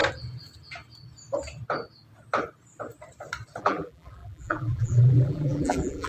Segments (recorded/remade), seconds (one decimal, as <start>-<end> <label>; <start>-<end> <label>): 0.0-3.6 recorded; 3.6-6.1 remade